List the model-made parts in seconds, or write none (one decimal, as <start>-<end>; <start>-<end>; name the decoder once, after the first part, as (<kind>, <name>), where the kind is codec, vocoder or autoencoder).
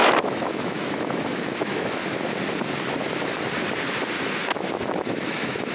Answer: 0.0-2.0 (autoencoder, DAC-VAE); 4.4-5.7